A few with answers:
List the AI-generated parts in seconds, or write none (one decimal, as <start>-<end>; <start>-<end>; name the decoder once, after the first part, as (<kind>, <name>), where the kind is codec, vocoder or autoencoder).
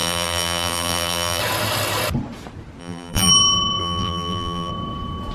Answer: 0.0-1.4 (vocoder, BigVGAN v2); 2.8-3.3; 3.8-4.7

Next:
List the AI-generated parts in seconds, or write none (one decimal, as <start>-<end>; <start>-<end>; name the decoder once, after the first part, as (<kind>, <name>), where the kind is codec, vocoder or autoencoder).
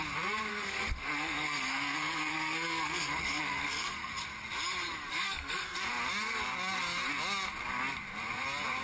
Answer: 0.5-4.1 (codec, SNAC); 5.1-5.9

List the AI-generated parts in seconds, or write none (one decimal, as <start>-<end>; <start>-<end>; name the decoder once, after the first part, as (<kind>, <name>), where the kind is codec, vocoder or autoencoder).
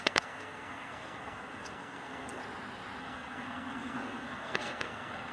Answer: 0.0-2.4 (codec, SNAC); 3.0-5.3